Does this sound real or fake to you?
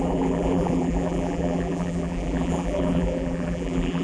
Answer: fake